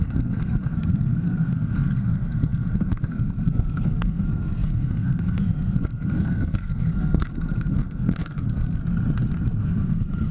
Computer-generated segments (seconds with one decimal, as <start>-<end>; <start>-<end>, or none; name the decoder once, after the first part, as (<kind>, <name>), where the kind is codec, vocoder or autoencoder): 0.0-8.8 (codec, SNAC); 9.6-10.3